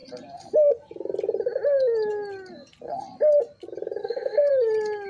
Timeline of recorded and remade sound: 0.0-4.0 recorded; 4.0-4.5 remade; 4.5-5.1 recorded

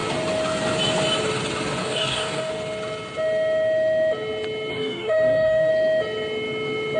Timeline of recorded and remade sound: 0.0-1.8 recorded; 1.8-2.5 remade; 2.5-4.7 recorded; 4.7-5.7 remade; 5.7-7.0 recorded